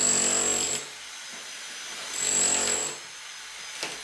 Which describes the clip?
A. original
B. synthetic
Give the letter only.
A